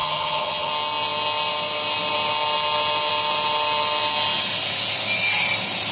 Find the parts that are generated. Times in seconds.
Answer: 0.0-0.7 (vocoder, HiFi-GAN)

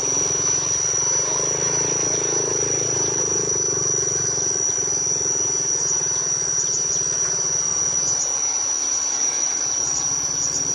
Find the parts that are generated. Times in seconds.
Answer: 9.1-9.6 (codec, DAC)